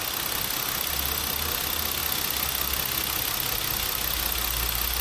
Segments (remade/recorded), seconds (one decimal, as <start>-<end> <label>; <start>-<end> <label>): 0.0-5.0 recorded